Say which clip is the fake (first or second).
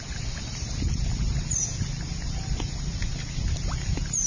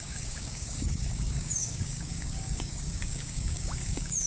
second